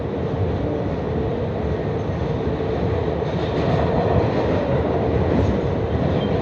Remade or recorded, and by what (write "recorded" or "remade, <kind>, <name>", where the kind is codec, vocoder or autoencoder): recorded